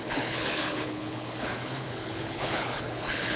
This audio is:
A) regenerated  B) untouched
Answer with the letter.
A